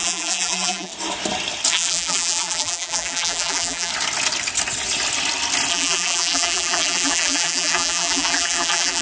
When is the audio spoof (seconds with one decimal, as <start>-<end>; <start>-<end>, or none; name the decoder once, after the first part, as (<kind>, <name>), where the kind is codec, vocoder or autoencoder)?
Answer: 0.0-0.9 (vocoder, BigVGAN v2); 1.7-3.9; 5.7-9.0